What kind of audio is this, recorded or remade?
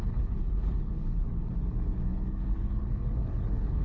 remade